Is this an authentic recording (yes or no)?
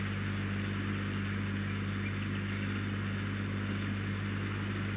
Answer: yes